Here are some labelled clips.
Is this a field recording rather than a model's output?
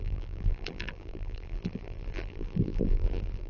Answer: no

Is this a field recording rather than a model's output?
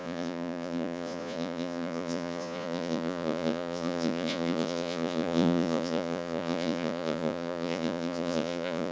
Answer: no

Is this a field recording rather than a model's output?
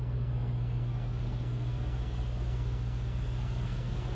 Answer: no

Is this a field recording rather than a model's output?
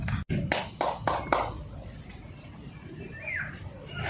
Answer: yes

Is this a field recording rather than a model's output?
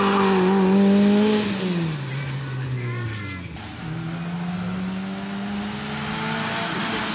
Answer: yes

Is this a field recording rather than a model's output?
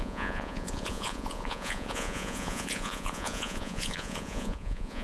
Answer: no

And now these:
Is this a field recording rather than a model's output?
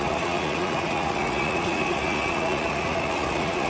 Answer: no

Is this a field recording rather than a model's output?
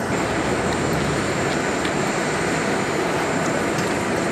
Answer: yes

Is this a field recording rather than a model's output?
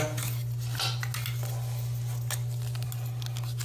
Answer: yes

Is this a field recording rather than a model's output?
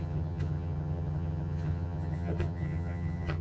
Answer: no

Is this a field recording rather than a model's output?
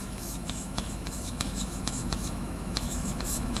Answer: no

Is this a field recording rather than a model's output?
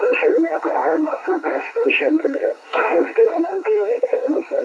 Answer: no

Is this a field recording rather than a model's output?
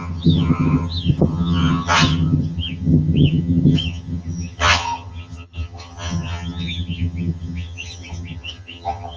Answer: no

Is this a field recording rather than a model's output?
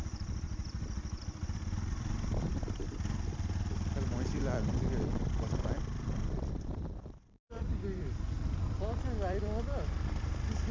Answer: no